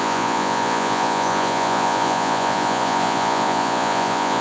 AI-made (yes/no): yes